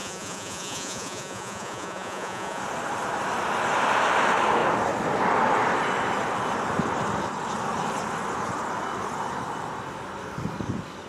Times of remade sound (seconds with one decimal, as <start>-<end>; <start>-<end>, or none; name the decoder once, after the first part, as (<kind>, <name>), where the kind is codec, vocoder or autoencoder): 0.0-2.6 (vocoder, Vocos)